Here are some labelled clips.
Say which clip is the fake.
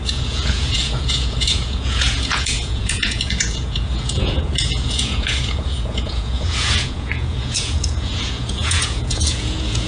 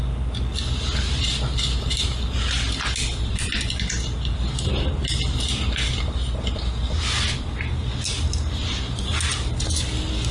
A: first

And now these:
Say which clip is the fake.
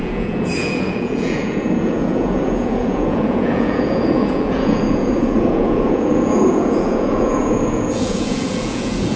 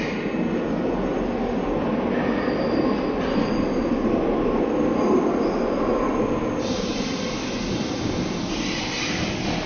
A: first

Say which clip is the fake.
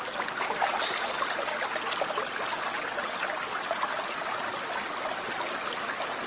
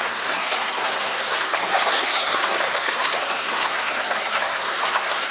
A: second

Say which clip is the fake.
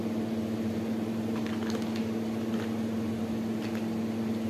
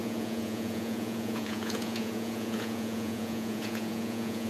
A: second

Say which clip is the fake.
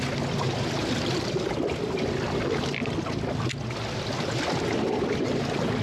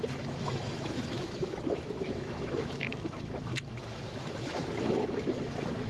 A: second